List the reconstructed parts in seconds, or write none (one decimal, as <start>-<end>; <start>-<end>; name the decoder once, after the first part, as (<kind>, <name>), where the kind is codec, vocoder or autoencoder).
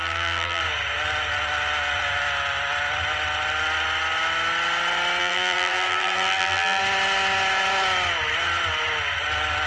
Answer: 0.0-0.6 (vocoder, BigVGAN v2); 5.2-6.8